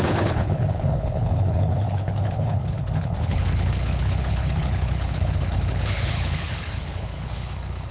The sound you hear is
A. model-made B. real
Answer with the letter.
A